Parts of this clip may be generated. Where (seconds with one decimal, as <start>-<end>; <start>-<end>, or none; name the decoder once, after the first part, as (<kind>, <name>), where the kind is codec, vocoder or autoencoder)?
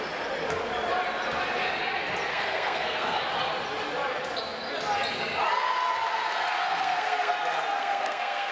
2.3-3.3 (codec, SNAC); 6.6-7.3; 7.8-8.5